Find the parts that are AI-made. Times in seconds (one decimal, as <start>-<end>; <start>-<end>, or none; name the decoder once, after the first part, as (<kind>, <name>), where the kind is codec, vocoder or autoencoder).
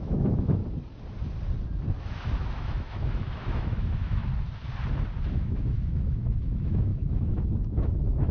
0.0-0.6 (autoencoder, DAC-VAE); 2.0-4.2; 5.3-8.3